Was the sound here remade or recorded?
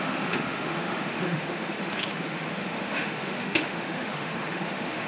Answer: remade